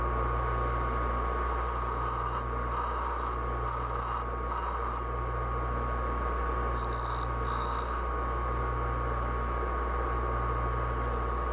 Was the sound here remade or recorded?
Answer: recorded